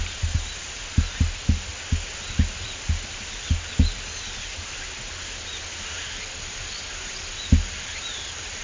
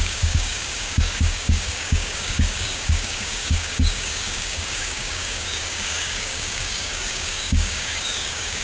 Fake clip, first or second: second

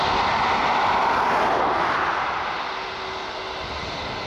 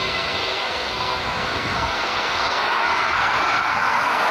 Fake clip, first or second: second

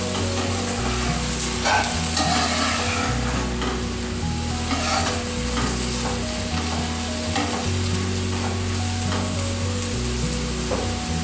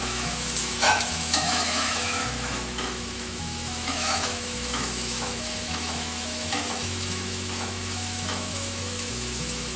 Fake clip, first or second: second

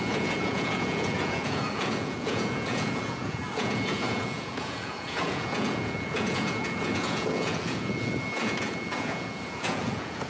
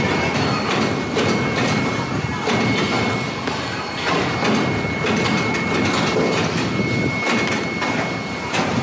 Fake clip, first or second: first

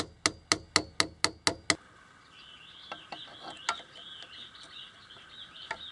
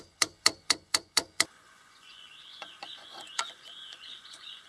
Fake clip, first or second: second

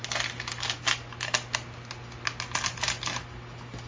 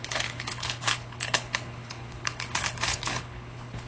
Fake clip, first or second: second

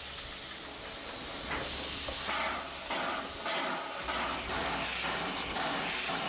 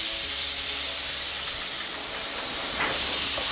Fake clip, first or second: second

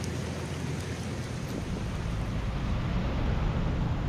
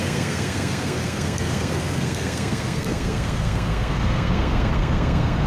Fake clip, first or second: second